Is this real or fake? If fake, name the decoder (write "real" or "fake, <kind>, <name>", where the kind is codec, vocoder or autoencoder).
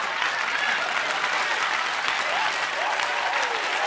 real